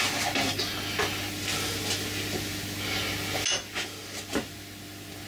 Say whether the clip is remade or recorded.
recorded